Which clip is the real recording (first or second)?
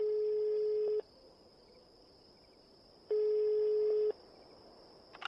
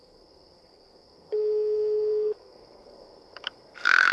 first